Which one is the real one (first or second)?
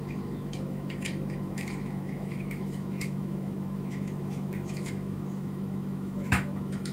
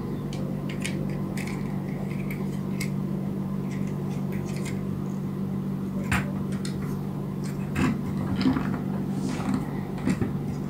second